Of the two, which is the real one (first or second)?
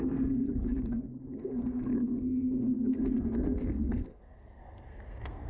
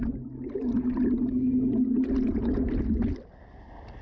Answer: second